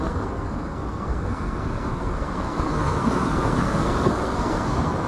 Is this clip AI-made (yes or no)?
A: yes